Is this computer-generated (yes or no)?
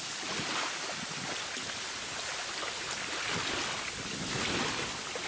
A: no